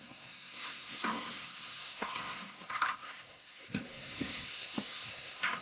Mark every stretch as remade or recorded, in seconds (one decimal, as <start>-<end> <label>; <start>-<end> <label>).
0.0-5.6 remade